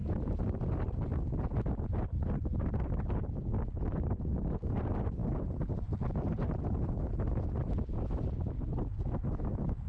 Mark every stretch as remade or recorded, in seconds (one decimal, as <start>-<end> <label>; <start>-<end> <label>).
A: 0.0-9.9 recorded